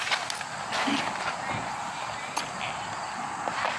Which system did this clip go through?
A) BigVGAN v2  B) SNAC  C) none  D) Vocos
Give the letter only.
C